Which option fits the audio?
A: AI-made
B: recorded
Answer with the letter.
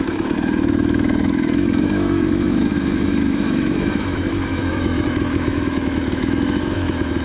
A